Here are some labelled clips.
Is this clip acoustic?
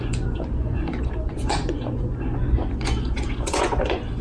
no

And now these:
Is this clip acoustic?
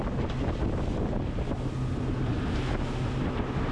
yes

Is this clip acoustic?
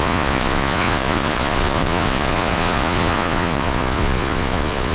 no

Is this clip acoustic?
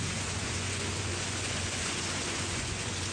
no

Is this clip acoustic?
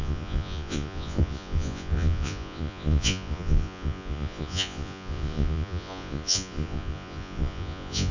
no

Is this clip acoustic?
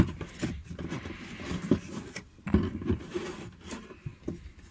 yes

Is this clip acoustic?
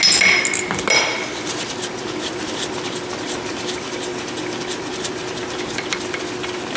yes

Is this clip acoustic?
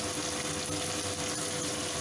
yes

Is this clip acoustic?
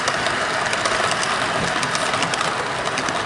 yes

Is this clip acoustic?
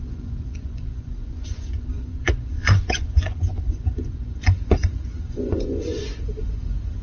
no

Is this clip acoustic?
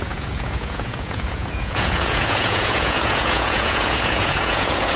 no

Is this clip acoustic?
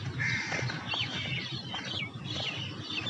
yes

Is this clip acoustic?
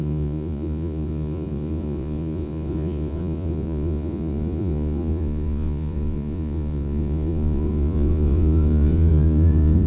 no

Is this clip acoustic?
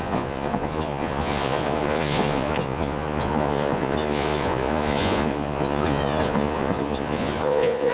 no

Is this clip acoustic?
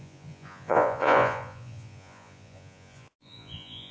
no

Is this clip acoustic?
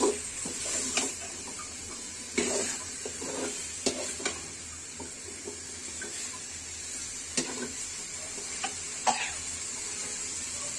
yes